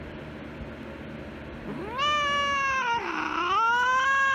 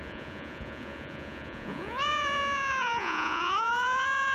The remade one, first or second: second